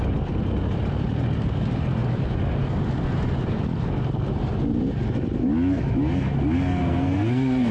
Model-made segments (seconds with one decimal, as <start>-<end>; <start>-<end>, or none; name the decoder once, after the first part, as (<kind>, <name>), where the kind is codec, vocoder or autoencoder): 6.8-7.7 (codec, SNAC)

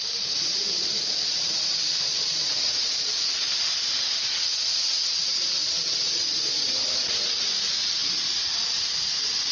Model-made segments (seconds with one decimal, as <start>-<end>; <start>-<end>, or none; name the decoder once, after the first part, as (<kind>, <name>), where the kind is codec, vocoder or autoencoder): 0.0-9.5 (vocoder, BigVGAN v2)

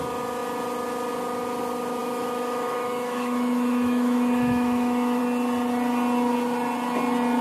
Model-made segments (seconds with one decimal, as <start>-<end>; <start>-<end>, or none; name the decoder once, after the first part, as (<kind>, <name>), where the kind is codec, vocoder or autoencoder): 2.0-5.2 (autoencoder, DAC-VAE)

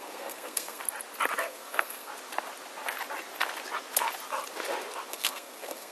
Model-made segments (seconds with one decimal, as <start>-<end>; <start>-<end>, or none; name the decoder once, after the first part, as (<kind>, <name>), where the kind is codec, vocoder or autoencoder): 0.0-0.8 (codec, SNAC); 1.4-2.1; 5.1-5.9

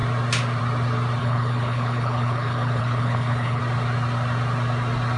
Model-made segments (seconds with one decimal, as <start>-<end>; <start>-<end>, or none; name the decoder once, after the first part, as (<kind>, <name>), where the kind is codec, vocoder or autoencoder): 1.2-3.6 (codec, HILCodec)

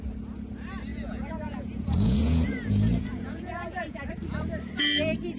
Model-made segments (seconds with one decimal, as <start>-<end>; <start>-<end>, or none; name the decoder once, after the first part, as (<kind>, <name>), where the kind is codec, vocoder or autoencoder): 0.9-4.1 (vocoder, Vocos)

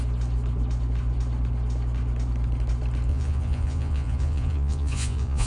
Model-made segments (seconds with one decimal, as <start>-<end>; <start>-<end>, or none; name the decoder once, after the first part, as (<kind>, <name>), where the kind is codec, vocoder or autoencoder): 3.1-5.5 (vocoder, Vocos)